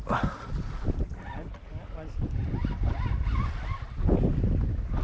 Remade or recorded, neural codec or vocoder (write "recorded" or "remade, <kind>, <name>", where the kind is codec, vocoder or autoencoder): recorded